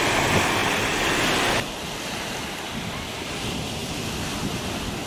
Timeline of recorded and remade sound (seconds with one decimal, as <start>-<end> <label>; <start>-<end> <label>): 0.0-5.1 recorded